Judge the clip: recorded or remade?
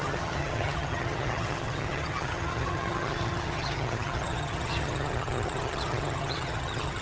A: remade